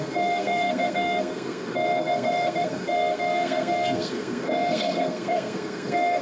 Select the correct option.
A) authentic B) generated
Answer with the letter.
B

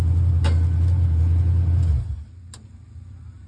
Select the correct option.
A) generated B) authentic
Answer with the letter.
B